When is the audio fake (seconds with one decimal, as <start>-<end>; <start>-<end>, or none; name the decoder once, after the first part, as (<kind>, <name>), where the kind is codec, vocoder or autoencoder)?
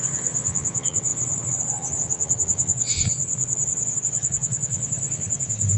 0.0-5.8 (vocoder, Vocos)